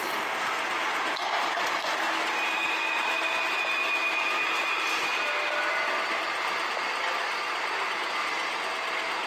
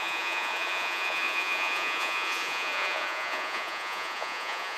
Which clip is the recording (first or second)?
first